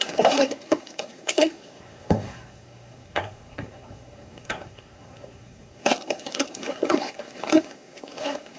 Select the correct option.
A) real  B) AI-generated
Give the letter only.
B